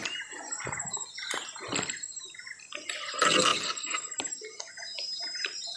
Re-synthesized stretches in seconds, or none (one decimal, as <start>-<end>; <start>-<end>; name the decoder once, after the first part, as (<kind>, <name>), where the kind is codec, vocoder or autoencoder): none